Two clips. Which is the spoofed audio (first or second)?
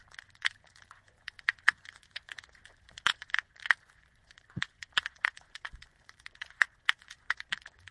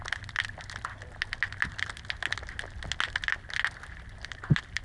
first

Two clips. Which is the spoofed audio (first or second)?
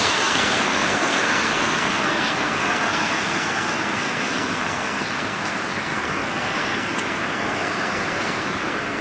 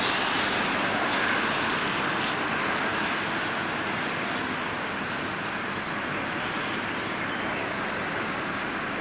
first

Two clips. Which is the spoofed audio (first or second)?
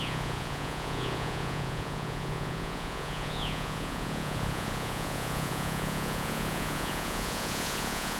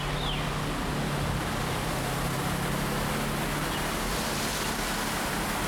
first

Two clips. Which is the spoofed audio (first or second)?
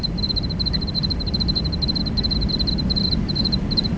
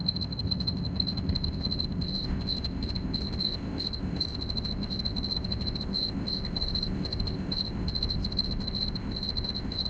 second